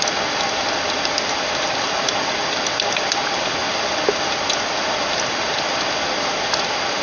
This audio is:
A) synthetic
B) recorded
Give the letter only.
B